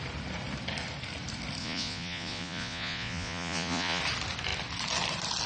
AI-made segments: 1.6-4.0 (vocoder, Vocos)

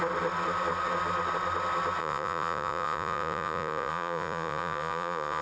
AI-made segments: 2.0-5.4 (vocoder, Vocos)

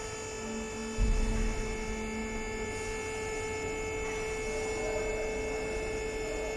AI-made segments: none

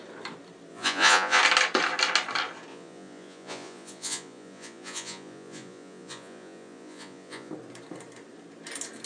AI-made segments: 0.7-1.4 (vocoder, Vocos); 2.7-7.5

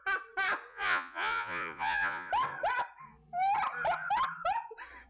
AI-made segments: 0.7-2.3 (vocoder, Vocos)

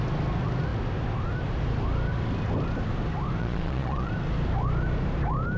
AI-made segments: 3.4-4.1 (vocoder, Vocos)

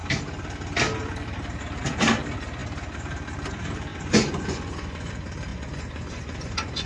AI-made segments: 3.9-5.1 (vocoder, Vocos); 5.5-6.9

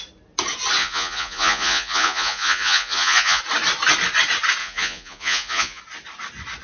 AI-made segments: 0.8-3.4 (vocoder, Vocos); 4.6-5.8